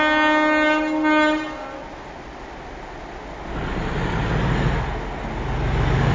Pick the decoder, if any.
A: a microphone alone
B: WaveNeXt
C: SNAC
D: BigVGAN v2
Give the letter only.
A